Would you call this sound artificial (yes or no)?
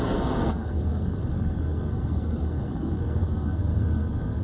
yes